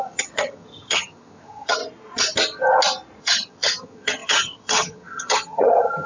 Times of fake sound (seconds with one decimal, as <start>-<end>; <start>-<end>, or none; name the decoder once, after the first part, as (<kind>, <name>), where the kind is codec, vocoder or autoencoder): 0.0-1.8 (vocoder, HiFi-GAN); 3.2-6.1